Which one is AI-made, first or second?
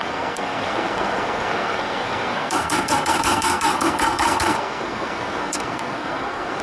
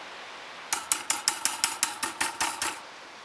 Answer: first